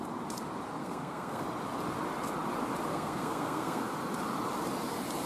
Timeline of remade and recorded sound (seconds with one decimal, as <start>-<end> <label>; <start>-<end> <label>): 0.0-0.8 recorded; 0.8-1.4 remade; 1.4-2.9 recorded; 2.9-3.8 remade; 3.8-5.3 recorded